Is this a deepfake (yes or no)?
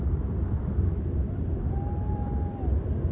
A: no